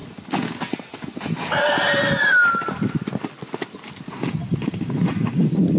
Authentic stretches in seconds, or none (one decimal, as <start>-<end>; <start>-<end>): 0.0-5.8

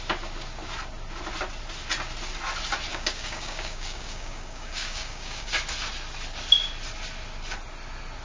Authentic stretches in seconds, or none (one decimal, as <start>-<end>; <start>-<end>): 0.0-2.9; 5.5-8.2

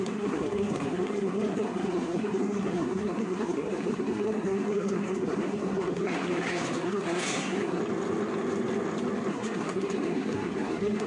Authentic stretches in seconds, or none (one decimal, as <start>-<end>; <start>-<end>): 7.8-9.3

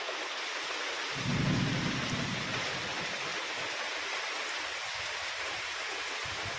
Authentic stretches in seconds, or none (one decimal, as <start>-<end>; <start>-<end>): 0.0-3.3; 3.9-6.6

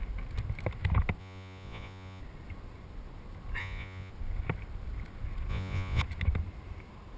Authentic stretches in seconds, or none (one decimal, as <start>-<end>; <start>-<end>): 0.0-1.2; 2.2-3.6; 4.1-5.5; 6.0-7.2

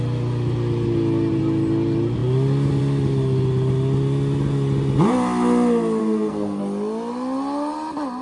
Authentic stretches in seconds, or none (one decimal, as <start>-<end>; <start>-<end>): 0.0-6.0; 6.6-8.2